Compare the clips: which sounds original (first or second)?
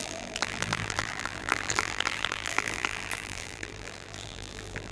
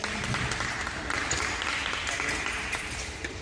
second